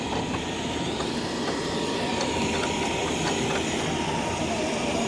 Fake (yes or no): no